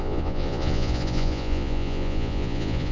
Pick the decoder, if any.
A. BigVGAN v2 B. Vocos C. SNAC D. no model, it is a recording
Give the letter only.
B